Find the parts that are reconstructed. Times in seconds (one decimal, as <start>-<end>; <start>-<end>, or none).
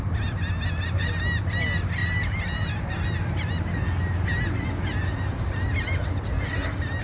none